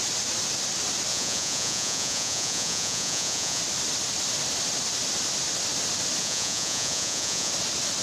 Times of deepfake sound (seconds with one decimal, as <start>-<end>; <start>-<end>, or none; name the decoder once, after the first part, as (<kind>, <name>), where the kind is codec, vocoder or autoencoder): 1.1-3.6 (vocoder, Vocos); 6.2-7.5